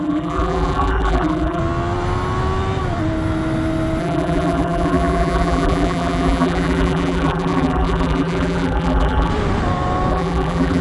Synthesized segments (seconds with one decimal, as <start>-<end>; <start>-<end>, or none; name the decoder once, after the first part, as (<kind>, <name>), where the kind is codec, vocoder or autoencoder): 0.0-1.6 (vocoder, BigVGAN v2); 4.0-9.3; 10.1-10.8